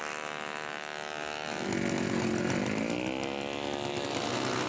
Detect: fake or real real